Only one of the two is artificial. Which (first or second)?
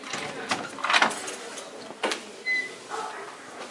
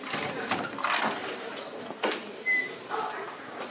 second